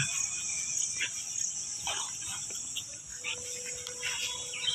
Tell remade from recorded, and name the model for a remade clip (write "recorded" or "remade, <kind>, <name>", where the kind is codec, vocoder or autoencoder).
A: recorded